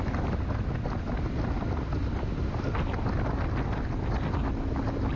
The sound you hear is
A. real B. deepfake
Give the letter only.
A